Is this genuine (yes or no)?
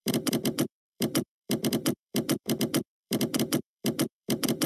no